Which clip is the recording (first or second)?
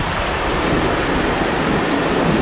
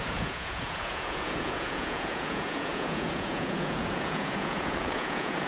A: first